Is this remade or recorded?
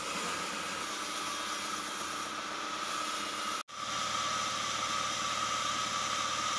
recorded